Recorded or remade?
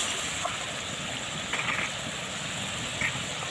recorded